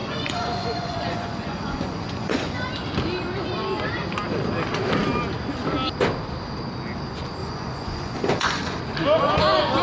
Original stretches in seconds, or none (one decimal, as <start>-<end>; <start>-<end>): 2.7-7.4; 8.8-9.8